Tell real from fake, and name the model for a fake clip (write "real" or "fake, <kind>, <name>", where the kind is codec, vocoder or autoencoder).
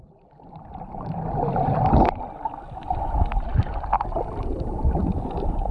fake, vocoder, BigVGAN v2